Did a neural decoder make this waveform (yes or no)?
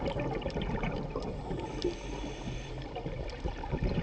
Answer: yes